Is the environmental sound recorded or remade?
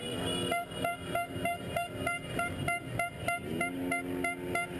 recorded